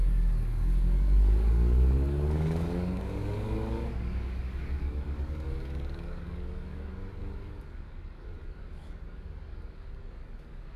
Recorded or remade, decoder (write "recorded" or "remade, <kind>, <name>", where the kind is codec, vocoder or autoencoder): remade, codec, DAC